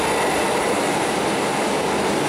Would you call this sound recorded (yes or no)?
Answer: yes